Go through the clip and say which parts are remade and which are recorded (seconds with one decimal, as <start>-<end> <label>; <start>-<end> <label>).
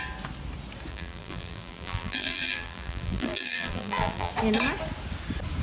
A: 0.0-0.9 recorded; 0.9-4.3 remade; 4.3-5.6 recorded